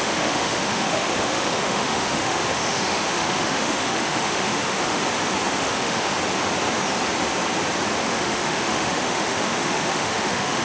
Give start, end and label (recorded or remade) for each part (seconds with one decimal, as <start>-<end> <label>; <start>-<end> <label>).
0.0-5.0 remade; 5.0-5.6 recorded; 5.6-6.1 remade; 6.1-8.0 recorded; 8.0-10.6 remade